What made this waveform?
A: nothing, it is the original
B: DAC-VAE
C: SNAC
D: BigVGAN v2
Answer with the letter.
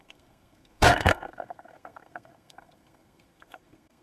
C